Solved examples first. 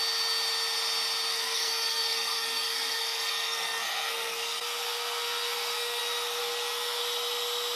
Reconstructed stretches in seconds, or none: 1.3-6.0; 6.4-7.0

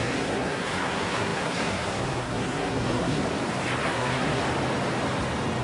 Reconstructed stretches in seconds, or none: 0.0-3.2; 3.8-4.4

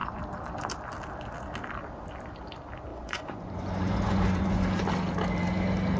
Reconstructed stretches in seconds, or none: 2.9-4.8

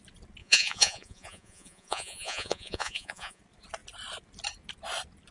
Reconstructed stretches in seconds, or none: 0.4-3.4

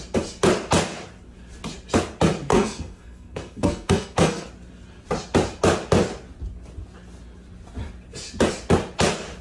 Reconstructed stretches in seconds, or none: 2.5-4.5

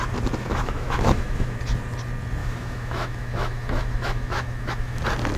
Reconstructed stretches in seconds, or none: 0.4-1.6; 2.4-5.0

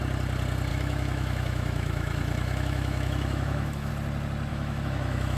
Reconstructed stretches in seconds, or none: 0.7-3.9; 4.5-5.4